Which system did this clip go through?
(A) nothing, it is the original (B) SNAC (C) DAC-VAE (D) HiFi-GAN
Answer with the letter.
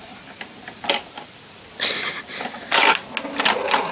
A